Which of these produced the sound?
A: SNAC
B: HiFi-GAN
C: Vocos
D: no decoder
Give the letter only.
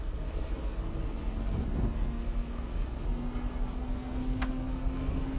A